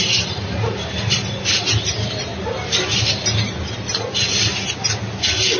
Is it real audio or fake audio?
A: real